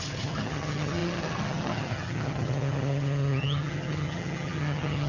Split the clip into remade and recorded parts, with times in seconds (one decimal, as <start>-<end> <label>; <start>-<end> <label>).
0.0-5.1 remade